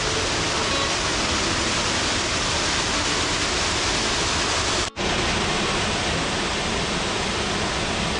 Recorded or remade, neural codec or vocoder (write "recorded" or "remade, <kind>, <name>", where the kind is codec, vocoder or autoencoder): recorded